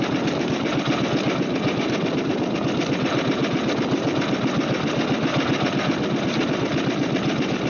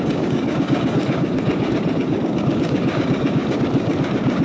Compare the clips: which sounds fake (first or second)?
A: second